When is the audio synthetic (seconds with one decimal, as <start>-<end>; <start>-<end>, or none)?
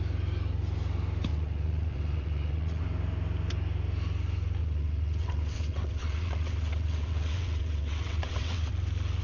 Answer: 1.3-2.8; 4.6-8.7